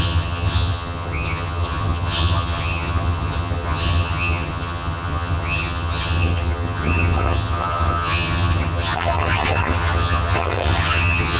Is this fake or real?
fake